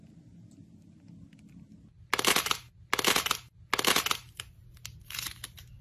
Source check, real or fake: real